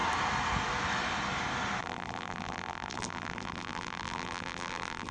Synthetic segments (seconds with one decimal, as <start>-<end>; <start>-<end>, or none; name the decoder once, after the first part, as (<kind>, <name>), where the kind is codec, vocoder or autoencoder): 1.8-5.1 (vocoder, BigVGAN v2)